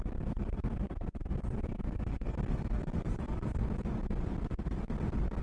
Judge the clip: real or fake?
fake